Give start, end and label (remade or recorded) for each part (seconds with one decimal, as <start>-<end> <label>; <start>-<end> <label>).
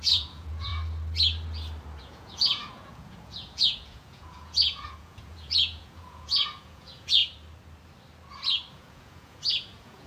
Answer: 0.0-0.7 remade; 0.7-2.0 recorded; 2.0-7.2 remade; 7.2-8.7 recorded; 8.7-10.1 remade